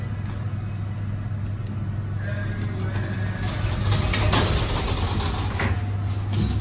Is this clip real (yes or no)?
yes